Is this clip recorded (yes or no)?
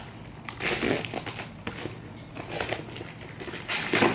yes